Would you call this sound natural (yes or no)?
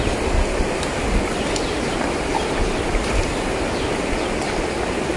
yes